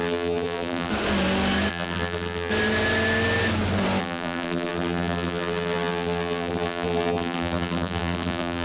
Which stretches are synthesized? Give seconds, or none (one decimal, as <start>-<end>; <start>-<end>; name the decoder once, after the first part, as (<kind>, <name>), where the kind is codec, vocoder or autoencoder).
0.0-0.9 (vocoder, BigVGAN v2); 1.7-2.5; 4.0-8.6